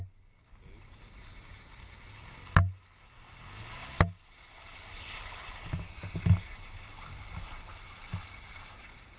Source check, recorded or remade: recorded